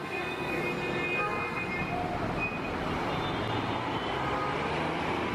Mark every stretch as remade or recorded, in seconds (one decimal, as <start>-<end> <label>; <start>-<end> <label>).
0.0-0.6 remade; 0.6-1.2 recorded; 1.2-1.7 remade; 1.7-5.3 recorded